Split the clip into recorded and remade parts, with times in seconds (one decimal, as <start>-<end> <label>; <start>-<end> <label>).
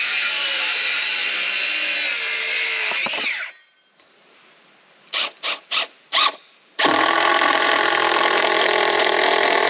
0.0-1.2 remade; 1.2-4.0 recorded; 4.0-9.7 remade